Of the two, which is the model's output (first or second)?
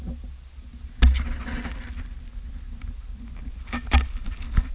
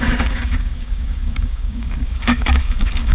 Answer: second